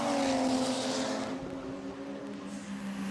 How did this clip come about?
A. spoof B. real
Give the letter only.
B